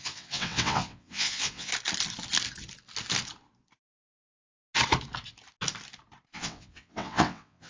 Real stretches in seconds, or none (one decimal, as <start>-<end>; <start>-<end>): 1.7-6.3